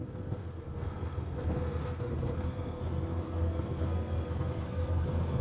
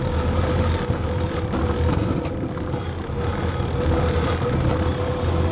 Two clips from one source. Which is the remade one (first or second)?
first